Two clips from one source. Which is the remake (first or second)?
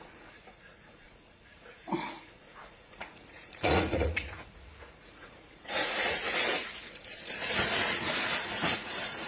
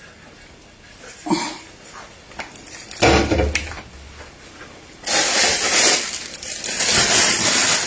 first